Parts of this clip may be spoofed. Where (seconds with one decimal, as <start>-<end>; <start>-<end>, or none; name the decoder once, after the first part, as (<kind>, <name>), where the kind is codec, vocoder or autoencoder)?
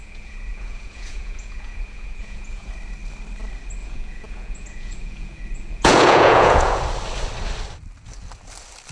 0.0-2.7 (vocoder, Vocos); 3.8-6.8